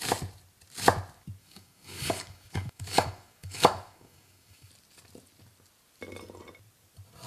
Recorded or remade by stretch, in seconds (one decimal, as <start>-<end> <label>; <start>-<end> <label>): 0.0-1.4 recorded; 1.4-4.7 remade; 4.7-7.3 recorded